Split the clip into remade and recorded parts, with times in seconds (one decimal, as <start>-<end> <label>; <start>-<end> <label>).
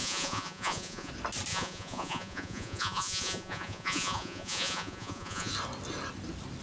0.0-1.1 remade; 1.1-1.5 recorded; 1.5-5.5 remade; 5.5-6.6 recorded